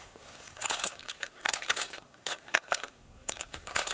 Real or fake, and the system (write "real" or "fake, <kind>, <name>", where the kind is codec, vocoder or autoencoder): fake, codec, SNAC